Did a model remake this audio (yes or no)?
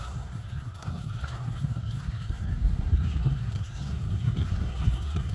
yes